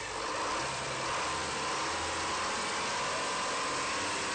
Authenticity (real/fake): real